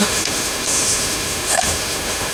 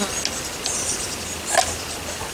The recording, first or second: second